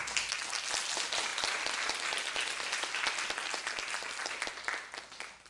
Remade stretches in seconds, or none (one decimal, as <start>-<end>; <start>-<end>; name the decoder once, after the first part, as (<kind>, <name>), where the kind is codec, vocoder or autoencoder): none